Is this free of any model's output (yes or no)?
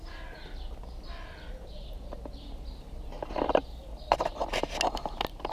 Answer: yes